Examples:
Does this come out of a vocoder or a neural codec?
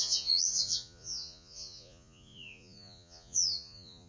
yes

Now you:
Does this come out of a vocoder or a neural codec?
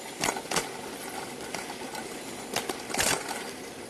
no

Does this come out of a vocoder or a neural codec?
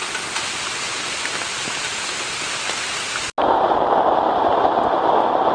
no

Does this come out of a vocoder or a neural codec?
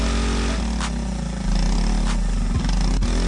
no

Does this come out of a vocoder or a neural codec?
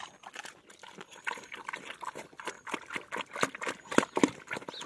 no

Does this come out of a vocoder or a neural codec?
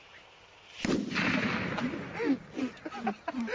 no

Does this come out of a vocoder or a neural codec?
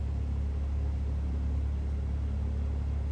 no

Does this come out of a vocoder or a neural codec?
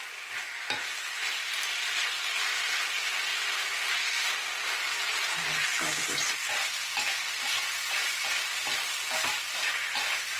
no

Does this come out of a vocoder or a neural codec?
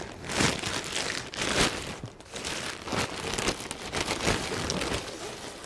no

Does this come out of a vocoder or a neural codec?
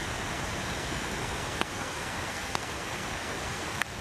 yes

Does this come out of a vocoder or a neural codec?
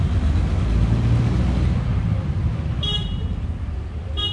no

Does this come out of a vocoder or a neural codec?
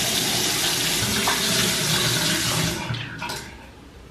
no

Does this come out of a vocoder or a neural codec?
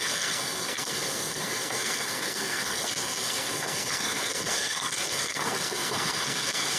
yes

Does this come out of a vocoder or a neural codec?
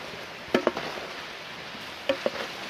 no